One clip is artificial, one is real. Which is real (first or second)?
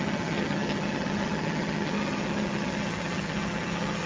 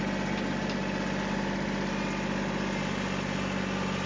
second